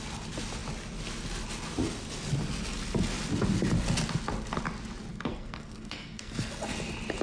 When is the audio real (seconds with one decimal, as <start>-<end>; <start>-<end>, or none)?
0.0-5.1; 6.5-7.2